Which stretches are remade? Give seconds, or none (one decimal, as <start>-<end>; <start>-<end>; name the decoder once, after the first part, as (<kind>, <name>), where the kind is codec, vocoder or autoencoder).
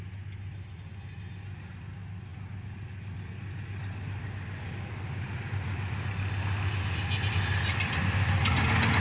none